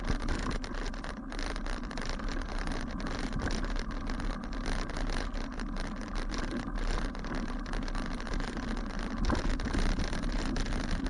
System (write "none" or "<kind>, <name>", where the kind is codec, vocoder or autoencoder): vocoder, BigVGAN v2